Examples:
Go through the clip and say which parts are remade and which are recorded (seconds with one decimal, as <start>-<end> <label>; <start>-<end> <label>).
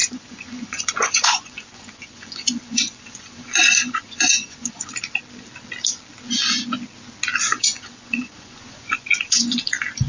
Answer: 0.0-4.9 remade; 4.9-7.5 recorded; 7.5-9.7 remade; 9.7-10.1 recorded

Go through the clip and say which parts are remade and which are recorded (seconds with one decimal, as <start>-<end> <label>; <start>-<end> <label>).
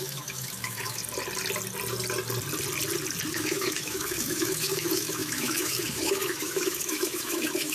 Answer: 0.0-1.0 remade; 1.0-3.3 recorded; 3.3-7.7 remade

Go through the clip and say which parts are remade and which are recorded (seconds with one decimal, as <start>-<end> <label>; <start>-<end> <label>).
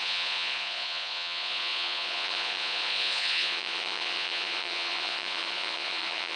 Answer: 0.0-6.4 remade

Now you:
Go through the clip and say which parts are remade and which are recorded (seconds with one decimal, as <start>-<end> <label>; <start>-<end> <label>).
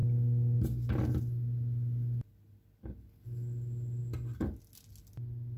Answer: 0.0-5.6 recorded